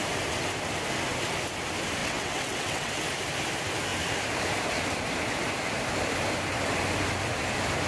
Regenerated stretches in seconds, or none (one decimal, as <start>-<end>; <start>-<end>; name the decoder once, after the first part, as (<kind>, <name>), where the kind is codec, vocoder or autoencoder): 2.0-2.9 (vocoder, WaveNeXt)